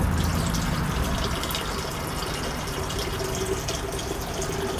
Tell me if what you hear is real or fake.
real